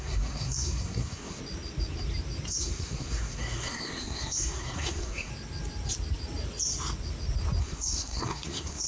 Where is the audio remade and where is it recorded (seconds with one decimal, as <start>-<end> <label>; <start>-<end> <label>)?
0.0-1.4 remade; 1.4-2.5 recorded; 2.5-5.3 remade; 5.3-7.6 recorded; 7.6-8.9 remade